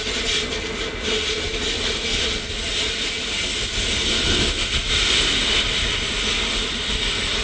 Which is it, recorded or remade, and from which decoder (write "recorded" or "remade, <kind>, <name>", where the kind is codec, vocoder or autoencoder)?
recorded